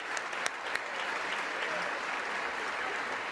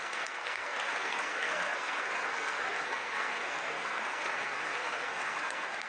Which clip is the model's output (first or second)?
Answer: second